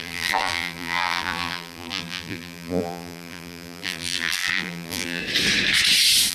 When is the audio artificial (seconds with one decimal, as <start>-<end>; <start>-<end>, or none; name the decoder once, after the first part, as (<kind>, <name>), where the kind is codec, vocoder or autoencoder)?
0.0-5.2 (vocoder, BigVGAN v2)